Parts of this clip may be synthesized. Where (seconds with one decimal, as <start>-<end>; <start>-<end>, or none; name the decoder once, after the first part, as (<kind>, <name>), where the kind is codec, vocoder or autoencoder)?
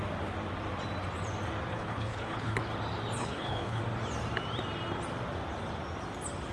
1.7-2.6 (codec, HILCodec); 3.2-3.8